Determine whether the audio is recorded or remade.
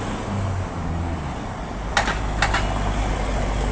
recorded